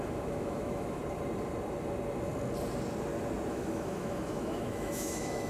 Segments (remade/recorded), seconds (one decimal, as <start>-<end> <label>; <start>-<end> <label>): 0.0-1.0 remade; 1.0-3.5 recorded; 3.5-5.5 remade